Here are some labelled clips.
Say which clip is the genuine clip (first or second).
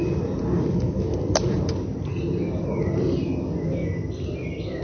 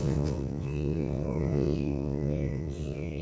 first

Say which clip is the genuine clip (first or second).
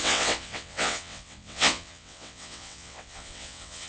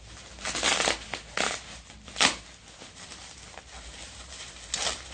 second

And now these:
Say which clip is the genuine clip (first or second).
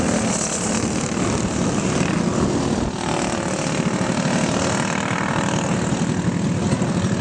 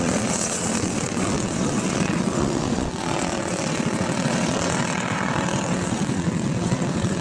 first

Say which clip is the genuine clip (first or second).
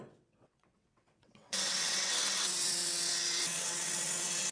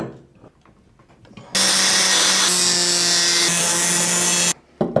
second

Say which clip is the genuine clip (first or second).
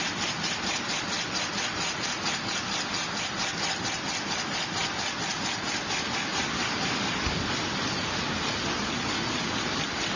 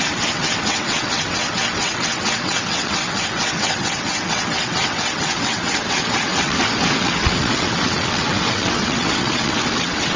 first